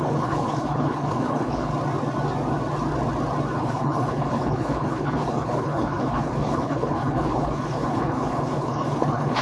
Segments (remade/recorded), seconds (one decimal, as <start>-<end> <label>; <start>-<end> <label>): 0.0-1.7 remade; 1.7-3.6 recorded; 3.6-9.4 remade